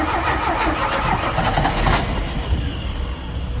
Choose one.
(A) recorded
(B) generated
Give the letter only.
A